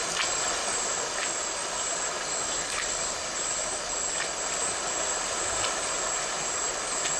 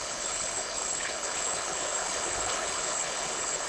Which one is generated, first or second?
second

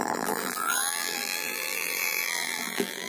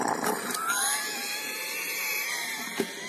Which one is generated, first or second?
first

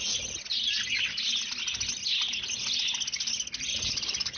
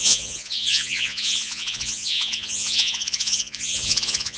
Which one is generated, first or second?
second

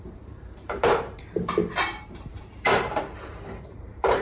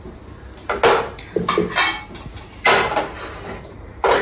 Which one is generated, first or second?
first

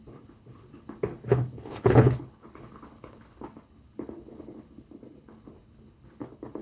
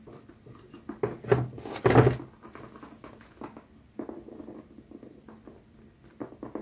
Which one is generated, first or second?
first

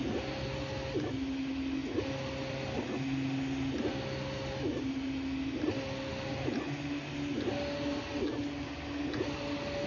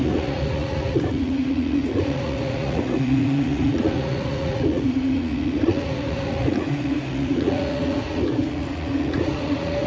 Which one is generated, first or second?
second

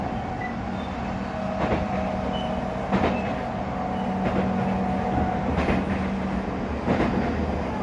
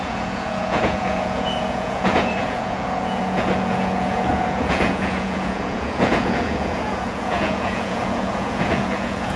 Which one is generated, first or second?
second